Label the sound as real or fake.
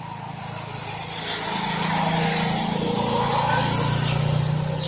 real